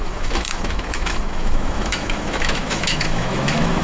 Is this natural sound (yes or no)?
no